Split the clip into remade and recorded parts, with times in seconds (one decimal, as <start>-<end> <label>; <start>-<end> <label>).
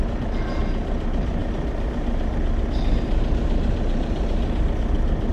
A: 0.0-5.3 recorded